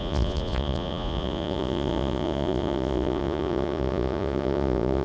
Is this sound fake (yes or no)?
yes